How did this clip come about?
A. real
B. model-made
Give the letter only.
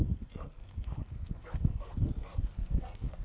B